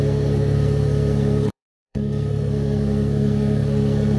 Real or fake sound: fake